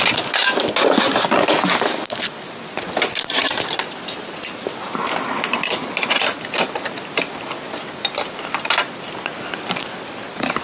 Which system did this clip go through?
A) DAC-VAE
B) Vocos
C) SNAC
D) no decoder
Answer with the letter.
D